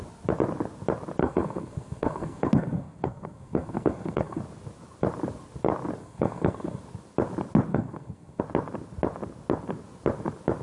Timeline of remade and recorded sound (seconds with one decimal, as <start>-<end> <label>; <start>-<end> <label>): 0.0-1.2 recorded; 1.2-4.4 remade; 4.4-6.0 recorded; 6.0-6.8 remade; 6.8-7.7 recorded; 7.7-8.4 remade; 8.4-10.6 recorded

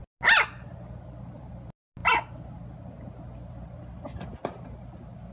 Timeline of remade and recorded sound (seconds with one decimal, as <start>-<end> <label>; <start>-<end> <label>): 0.0-5.3 recorded

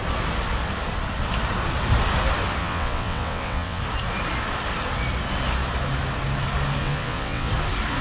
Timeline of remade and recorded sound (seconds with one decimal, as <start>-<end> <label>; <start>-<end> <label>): 0.0-2.6 recorded; 2.6-3.8 remade; 3.8-6.8 recorded; 6.8-7.5 remade; 7.5-8.0 recorded